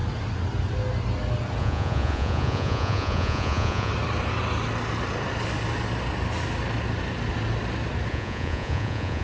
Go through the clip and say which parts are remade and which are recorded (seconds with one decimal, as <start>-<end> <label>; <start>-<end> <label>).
0.0-1.6 recorded; 1.6-3.9 remade; 3.9-8.1 recorded; 8.1-9.2 remade